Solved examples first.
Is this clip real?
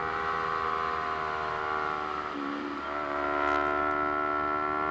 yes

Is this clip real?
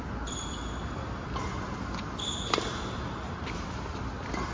yes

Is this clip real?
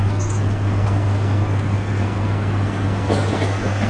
no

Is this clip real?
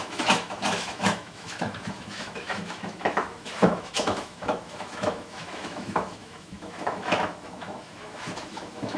no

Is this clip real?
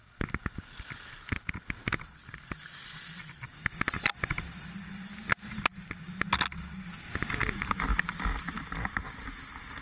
yes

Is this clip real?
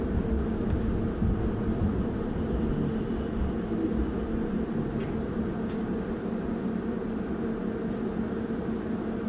yes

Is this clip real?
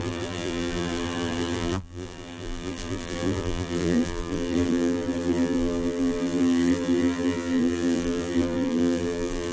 no